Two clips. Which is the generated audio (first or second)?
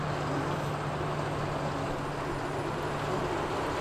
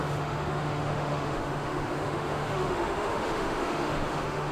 second